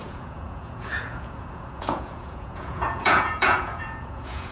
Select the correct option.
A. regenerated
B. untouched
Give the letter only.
A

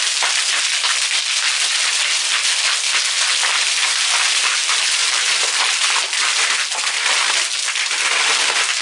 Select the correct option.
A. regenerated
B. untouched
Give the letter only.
B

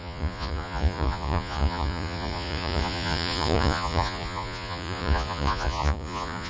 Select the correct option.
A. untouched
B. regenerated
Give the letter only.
B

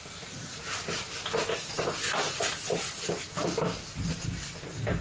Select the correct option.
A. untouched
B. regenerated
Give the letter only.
A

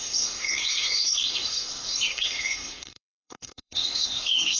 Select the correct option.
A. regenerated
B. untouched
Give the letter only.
A